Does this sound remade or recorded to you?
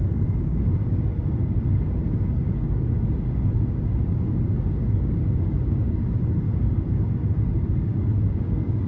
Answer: remade